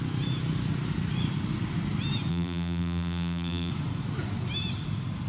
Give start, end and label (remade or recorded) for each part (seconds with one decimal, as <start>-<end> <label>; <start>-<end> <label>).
0.0-2.3 recorded; 2.3-3.7 remade; 3.7-5.3 recorded